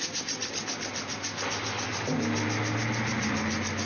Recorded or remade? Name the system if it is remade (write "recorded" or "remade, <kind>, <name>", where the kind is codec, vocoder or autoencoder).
recorded